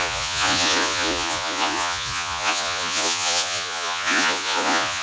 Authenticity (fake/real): fake